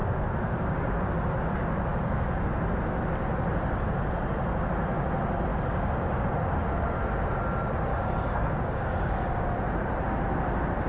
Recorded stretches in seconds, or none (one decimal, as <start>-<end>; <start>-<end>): 1.1-1.9; 2.5-5.5; 6.3-7.9; 9.5-10.9